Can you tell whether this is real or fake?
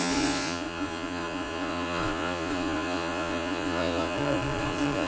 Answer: fake